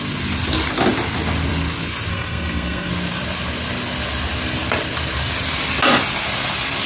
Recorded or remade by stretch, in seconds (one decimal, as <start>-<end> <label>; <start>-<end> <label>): 0.0-2.1 recorded; 2.1-2.9 remade; 2.9-6.9 recorded